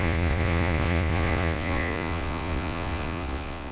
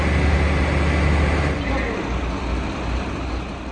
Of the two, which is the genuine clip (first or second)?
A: second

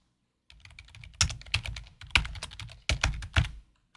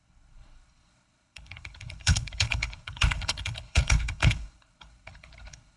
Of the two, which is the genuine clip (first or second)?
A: first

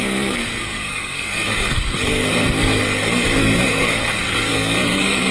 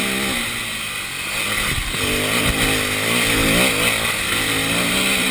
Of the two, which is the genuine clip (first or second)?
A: second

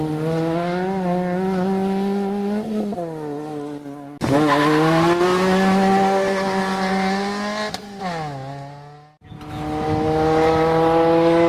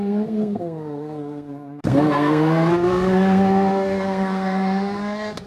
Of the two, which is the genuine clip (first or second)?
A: first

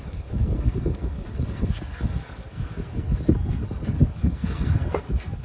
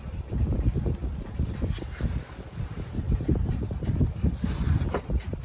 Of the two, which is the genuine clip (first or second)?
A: second